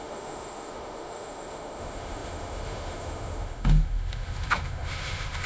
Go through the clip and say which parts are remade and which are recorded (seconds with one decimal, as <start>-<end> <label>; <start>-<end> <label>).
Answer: 0.0-5.5 remade